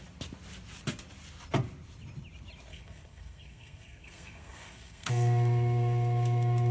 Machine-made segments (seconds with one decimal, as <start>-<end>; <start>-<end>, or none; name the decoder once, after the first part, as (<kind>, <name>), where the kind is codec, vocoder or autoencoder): 2.7-6.7 (codec, SNAC)